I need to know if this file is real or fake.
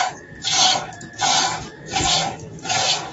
fake